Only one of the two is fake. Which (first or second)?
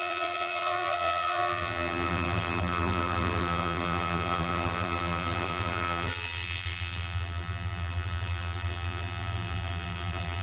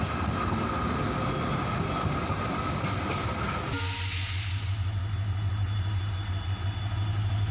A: first